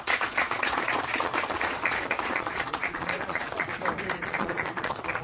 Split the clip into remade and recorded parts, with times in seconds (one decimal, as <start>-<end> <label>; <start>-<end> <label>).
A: 0.0-3.7 remade; 3.7-4.2 recorded; 4.2-5.2 remade